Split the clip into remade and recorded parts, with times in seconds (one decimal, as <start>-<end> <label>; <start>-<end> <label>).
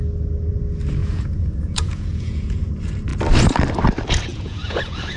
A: 0.0-1.0 recorded; 1.0-2.7 remade; 2.7-4.3 recorded; 4.3-5.2 remade